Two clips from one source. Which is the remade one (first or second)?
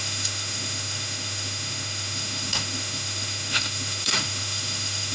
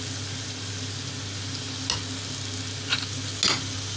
first